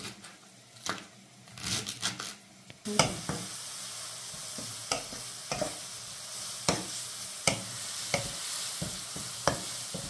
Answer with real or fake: real